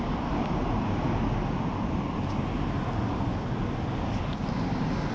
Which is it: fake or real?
real